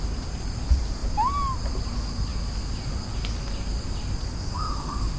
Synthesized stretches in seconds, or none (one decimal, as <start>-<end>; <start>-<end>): 4.5-5.2